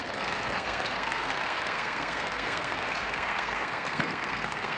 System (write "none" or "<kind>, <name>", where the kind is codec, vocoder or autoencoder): codec, SNAC